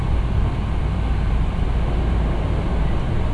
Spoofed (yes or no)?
no